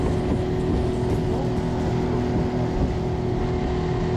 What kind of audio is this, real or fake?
real